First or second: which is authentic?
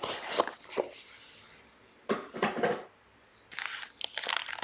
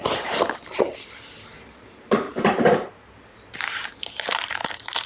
first